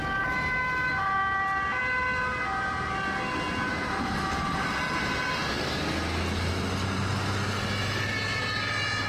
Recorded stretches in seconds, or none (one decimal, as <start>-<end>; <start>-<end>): 0.0-3.7; 4.7-9.1